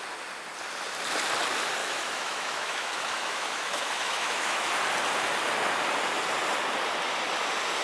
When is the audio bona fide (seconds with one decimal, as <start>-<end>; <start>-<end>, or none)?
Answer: 0.0-1.8; 4.7-7.8